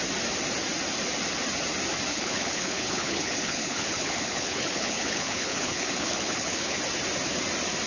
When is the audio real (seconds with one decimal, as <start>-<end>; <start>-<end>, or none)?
0.0-2.1; 6.8-7.9